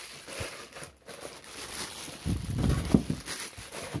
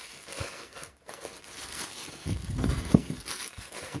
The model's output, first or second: second